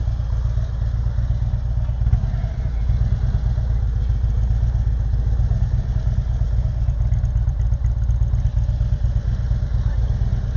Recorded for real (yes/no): yes